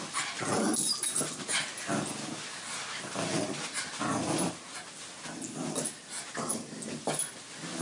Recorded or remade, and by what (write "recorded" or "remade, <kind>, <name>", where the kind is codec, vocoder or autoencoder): recorded